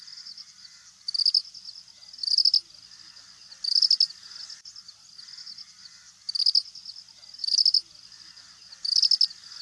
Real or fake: real